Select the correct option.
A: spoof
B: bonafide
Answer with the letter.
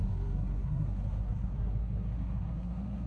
A